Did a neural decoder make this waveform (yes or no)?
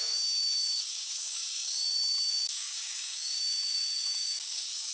yes